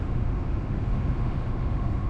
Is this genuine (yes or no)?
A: no